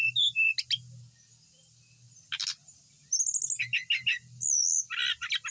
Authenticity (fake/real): real